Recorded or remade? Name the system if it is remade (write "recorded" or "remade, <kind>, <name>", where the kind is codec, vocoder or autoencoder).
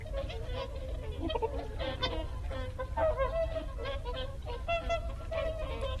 recorded